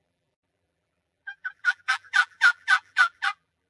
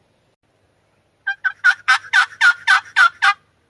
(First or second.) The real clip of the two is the second